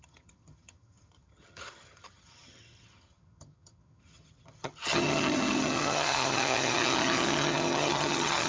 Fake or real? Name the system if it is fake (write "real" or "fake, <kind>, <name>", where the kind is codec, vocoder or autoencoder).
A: fake, vocoder, HiFi-GAN